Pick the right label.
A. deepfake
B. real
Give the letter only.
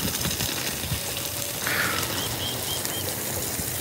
B